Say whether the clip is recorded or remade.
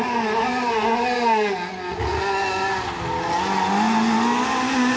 recorded